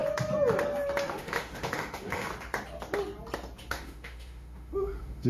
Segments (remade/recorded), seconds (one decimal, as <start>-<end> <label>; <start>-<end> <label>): 0.0-1.0 recorded; 1.0-2.3 remade; 2.3-3.7 recorded; 3.7-5.3 remade